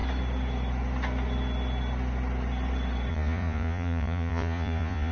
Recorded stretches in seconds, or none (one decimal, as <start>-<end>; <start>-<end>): 0.0-3.1